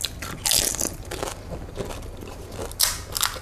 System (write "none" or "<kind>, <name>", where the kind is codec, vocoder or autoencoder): none